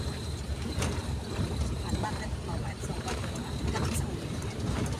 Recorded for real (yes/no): no